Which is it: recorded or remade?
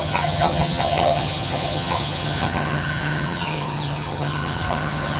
remade